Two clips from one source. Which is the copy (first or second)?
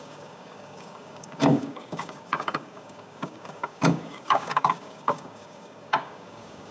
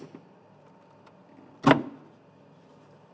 first